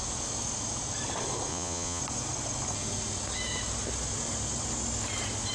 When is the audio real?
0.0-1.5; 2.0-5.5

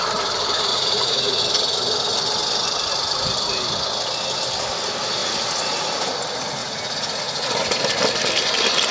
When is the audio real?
0.0-0.7; 1.4-6.6; 7.8-8.9

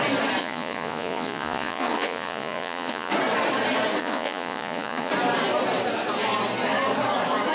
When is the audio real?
0.0-0.4; 3.1-4.0; 5.1-7.5

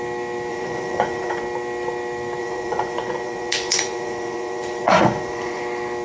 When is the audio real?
0.0-0.5; 1.4-2.4; 5.6-6.0

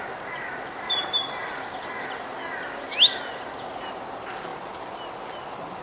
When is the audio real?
0.0-5.8